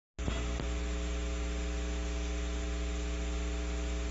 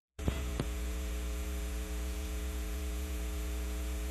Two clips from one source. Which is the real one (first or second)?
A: first